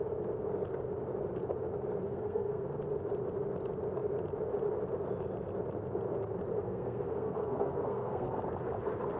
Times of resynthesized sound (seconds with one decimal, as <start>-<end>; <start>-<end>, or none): 2.0-2.7; 6.5-8.4